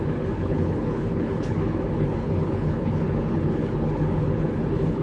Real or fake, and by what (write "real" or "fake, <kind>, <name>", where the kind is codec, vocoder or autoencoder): fake, codec, HILCodec